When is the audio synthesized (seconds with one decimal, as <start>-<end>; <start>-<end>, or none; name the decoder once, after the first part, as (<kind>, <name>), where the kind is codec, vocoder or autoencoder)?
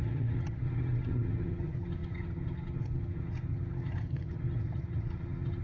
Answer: 0.0-5.6 (vocoder, HiFi-GAN)